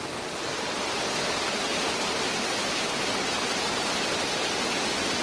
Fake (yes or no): no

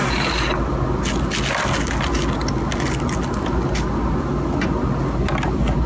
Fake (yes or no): no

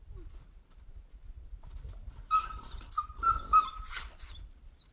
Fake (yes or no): yes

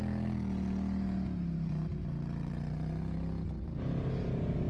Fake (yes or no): no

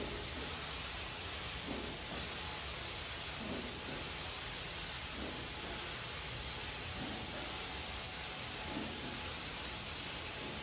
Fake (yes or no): no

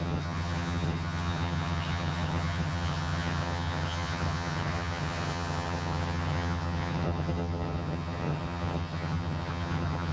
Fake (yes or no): yes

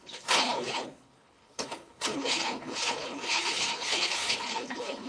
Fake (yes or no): yes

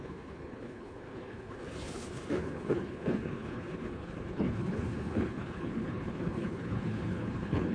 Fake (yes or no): yes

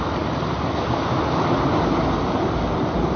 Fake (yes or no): no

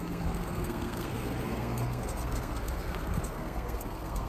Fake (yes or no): yes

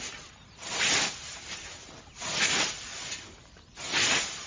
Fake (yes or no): no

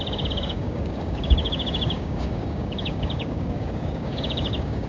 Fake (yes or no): yes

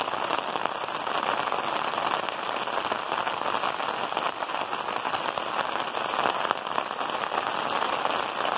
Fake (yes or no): no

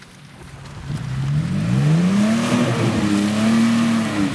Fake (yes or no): no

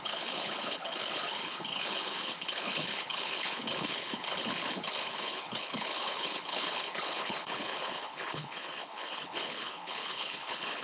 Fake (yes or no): yes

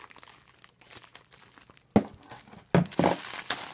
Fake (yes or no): no